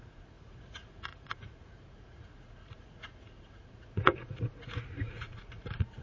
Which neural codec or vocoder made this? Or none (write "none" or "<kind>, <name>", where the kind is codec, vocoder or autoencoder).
vocoder, Vocos